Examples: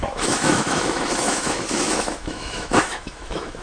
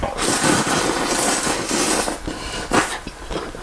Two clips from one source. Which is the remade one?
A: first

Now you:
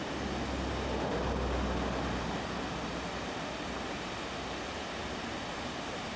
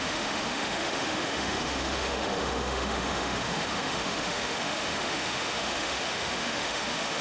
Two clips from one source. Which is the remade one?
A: second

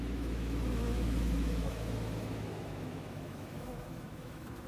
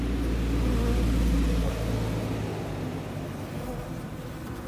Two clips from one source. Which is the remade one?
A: first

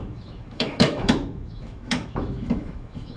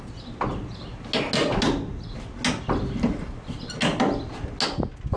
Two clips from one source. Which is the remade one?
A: first